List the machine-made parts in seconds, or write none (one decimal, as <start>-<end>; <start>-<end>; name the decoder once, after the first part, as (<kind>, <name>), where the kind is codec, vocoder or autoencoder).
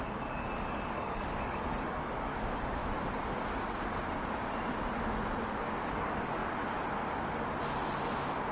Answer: 0.0-2.8 (codec, DAC); 5.9-6.4